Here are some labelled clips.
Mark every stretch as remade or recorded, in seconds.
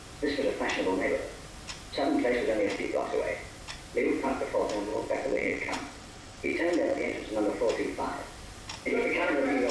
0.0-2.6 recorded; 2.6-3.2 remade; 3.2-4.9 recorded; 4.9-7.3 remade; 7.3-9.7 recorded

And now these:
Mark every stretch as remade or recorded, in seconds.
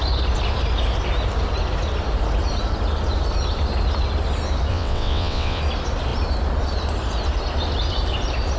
0.0-4.7 recorded; 4.7-5.6 remade; 5.6-8.6 recorded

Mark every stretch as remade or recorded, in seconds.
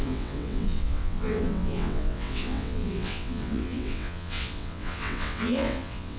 0.0-6.2 remade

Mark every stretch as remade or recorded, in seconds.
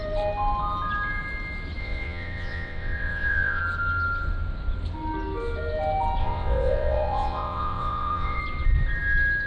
0.0-1.8 recorded; 1.8-3.6 remade; 3.6-6.2 recorded; 6.2-8.4 remade; 8.4-9.5 recorded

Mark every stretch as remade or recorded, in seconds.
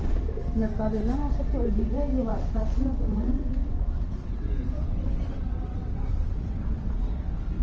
0.0-2.3 recorded; 2.3-6.9 remade; 6.9-7.6 recorded